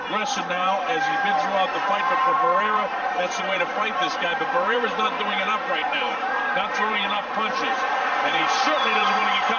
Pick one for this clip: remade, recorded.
remade